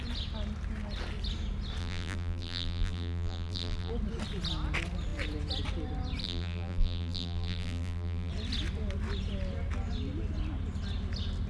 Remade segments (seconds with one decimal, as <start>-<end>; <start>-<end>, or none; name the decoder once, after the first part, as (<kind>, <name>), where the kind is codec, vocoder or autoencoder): 1.8-3.9 (vocoder, BigVGAN v2); 6.2-8.3